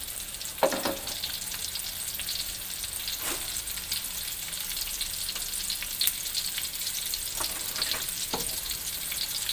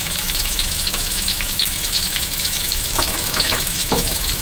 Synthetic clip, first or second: second